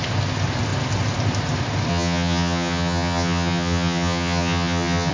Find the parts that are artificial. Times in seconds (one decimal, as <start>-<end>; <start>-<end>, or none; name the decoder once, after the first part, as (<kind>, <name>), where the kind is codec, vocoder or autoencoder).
1.9-5.1 (vocoder, HiFi-GAN)